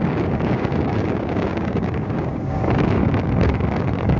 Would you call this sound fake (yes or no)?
yes